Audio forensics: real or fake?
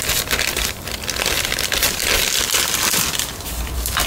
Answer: real